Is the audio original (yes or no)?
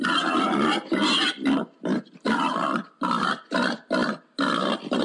yes